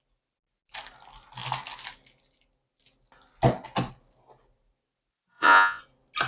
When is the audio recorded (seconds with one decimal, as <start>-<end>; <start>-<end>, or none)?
0.0-5.3; 5.8-6.3